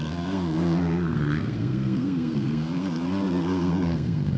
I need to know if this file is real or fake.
fake